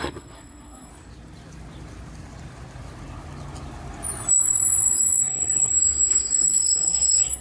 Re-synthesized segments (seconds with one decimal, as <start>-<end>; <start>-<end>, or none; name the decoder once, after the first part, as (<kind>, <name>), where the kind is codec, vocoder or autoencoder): 0.0-0.9 (codec, SNAC); 5.0-5.7; 6.3-7.4

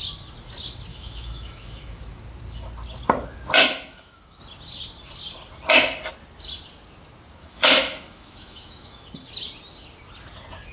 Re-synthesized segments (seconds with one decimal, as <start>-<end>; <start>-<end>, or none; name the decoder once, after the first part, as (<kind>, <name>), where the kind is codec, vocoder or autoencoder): 0.9-2.0 (autoencoder, DAC-VAE); 3.6-4.4; 7.4-9.1

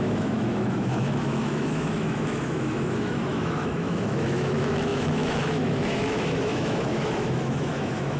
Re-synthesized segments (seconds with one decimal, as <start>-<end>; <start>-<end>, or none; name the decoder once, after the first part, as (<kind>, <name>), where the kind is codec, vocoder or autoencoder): 0.0-8.2 (autoencoder, DAC-VAE)

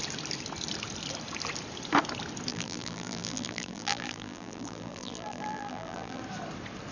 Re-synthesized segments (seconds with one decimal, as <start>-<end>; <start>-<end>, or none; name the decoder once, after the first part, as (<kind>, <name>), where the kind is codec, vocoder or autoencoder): 2.5-6.2 (vocoder, BigVGAN v2)

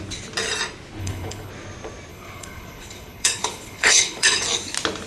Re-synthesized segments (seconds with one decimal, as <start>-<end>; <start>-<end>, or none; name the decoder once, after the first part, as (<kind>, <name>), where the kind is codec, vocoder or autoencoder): 1.0-1.5 (codec, HILCodec); 2.1-4.4

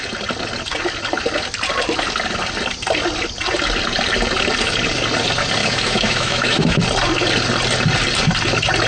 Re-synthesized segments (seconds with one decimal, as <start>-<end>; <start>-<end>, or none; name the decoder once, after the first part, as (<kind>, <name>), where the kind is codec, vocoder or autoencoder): 5.6-6.8 (autoencoder, DAC-VAE)

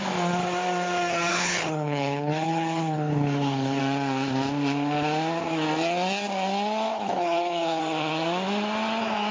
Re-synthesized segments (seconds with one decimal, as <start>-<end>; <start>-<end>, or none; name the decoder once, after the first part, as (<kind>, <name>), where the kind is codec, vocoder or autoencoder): 1.3-3.8 (codec, HILCodec); 6.9-7.8